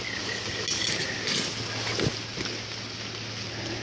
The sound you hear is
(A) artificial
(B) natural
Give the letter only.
B